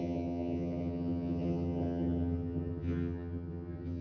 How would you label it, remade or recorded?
remade